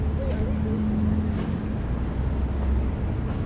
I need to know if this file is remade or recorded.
recorded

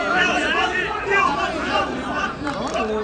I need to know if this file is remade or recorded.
recorded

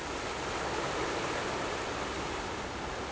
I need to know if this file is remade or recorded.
recorded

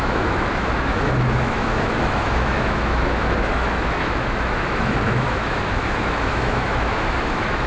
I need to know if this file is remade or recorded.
remade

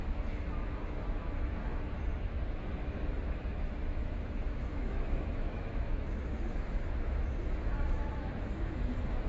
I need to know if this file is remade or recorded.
remade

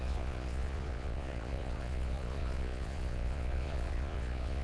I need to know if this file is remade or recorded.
remade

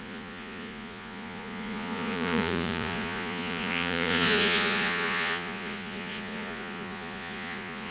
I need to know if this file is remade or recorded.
remade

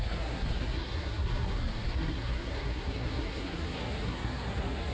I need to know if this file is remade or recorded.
remade